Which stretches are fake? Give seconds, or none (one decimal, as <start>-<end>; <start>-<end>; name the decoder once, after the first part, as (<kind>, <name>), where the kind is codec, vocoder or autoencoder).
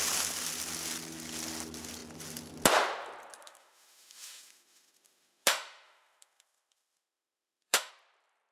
3.4-7.9 (autoencoder, DAC-VAE)